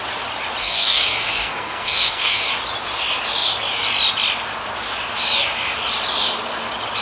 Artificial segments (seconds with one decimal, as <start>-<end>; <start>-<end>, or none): 0.6-2.4